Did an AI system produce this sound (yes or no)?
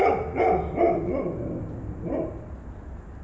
no